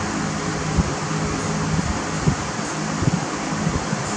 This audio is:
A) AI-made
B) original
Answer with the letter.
B